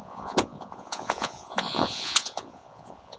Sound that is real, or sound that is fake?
fake